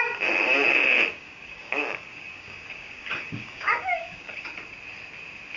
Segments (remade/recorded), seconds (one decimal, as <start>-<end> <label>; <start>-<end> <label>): 0.0-1.1 recorded; 1.1-4.5 remade; 4.5-5.6 recorded